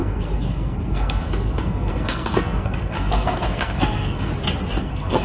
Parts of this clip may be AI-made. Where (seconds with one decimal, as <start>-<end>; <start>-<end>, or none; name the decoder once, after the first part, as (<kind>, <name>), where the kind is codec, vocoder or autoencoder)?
0.0-4.3 (codec, SNAC); 4.8-5.2